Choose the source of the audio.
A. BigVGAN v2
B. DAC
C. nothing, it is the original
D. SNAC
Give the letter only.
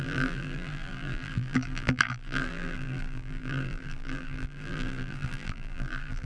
A